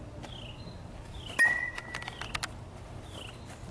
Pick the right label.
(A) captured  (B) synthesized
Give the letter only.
A